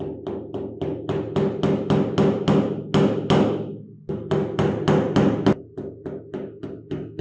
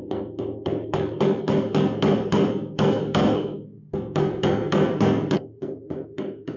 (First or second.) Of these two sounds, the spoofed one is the second